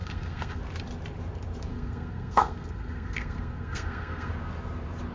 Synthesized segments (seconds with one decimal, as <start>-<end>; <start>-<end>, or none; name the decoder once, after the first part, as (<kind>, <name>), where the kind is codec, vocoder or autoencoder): 0.0-0.6 (codec, SNAC); 1.7-4.3